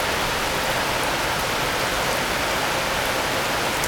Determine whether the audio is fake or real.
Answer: real